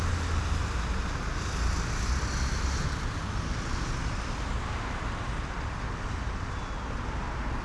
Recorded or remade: recorded